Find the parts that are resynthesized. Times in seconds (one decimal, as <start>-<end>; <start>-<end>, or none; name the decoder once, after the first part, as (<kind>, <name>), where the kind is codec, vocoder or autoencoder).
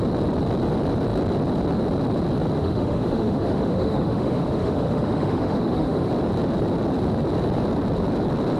2.6-6.1 (autoencoder, DAC-VAE)